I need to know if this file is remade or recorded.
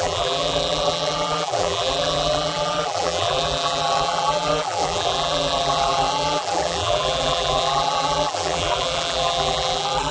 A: remade